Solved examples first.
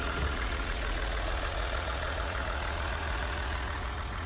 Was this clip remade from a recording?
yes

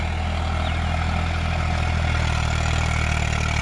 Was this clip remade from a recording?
no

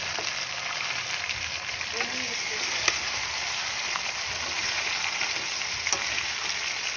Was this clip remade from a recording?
no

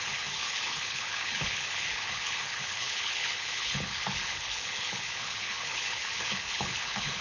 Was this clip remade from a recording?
yes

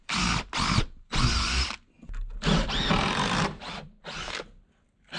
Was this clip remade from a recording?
no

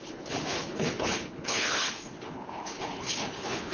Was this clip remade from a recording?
yes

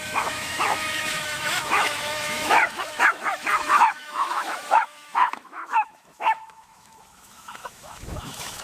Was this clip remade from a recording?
yes